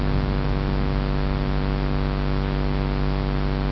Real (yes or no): yes